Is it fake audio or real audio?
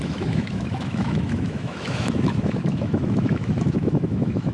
fake